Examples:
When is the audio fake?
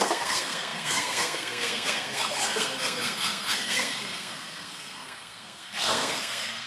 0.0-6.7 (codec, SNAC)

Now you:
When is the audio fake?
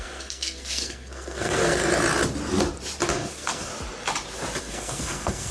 0.0-1.8 (codec, SNAC); 3.1-3.7; 4.6-5.5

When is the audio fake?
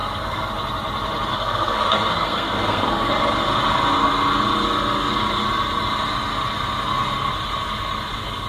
0.0-0.5 (codec, SNAC); 1.3-3.1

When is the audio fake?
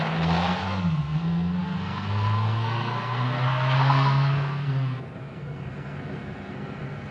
0.0-7.1 (codec, SNAC)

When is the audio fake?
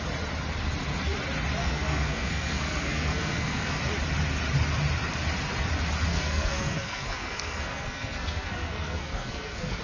1.6-3.8 (codec, SNAC); 6.1-9.8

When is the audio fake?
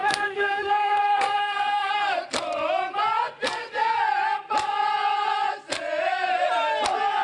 0.0-1.9 (codec, SNAC)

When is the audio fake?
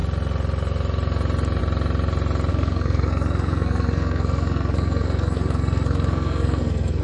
2.5-7.0 (codec, SNAC)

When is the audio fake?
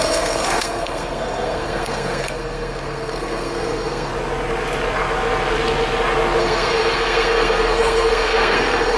0.0-4.1 (codec, SNAC); 6.4-9.0